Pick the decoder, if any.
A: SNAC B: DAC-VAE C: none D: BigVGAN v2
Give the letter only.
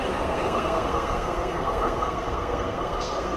A